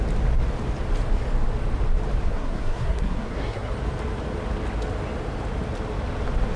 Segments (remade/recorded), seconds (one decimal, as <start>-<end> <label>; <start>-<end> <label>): 0.0-2.3 recorded; 2.3-3.7 remade; 3.7-6.6 recorded